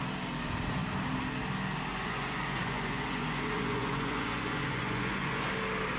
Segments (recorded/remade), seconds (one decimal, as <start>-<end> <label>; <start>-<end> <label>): 0.0-1.9 recorded; 1.9-5.5 remade; 5.5-6.0 recorded